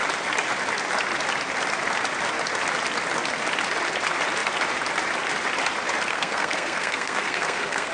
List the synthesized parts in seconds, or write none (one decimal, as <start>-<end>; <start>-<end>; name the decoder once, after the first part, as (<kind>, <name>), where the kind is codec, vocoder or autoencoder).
6.1-7.9 (codec, SNAC)